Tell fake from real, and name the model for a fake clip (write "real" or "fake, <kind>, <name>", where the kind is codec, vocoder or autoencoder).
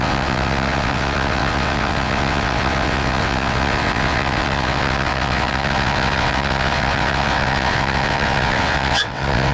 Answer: fake, vocoder, WaveNeXt